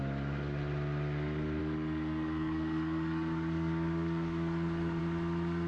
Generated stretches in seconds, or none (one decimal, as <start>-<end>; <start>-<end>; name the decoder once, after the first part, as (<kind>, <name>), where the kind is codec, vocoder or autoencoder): 1.6-5.0 (codec, DAC)